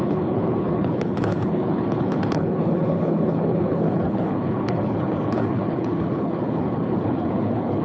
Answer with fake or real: fake